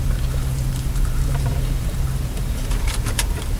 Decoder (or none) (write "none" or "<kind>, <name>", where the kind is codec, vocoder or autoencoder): vocoder, BigVGAN v2